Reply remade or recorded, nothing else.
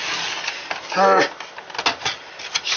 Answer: recorded